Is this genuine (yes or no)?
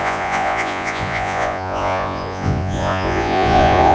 no